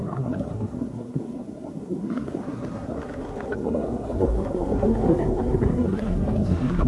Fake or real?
fake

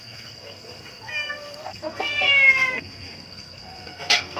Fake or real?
fake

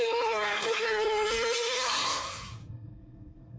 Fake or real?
fake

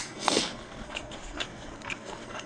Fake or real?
fake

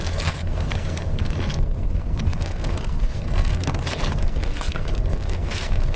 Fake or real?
fake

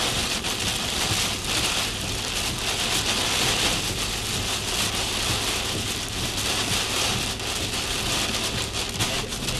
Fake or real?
real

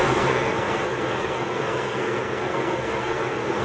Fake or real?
fake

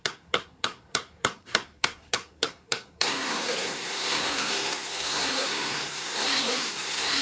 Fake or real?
fake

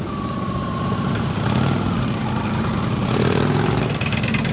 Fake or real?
real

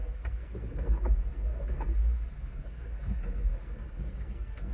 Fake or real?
fake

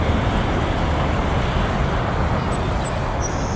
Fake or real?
real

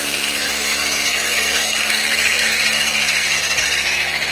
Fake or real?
fake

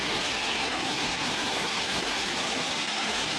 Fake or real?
fake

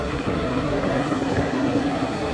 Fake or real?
fake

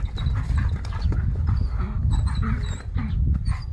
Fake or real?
real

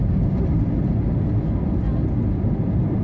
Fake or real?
real